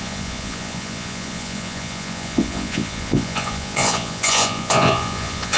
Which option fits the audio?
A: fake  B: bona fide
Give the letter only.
A